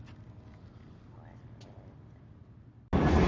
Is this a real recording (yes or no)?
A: yes